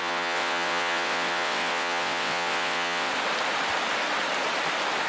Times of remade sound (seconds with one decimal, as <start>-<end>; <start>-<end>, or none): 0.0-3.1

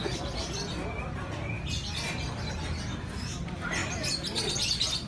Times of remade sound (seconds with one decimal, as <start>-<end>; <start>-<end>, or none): none

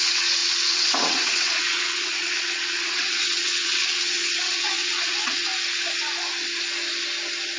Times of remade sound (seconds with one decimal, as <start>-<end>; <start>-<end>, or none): 0.0-5.5

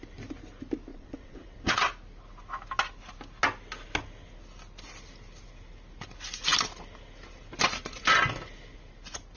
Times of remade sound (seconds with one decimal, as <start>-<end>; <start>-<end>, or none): 0.9-1.9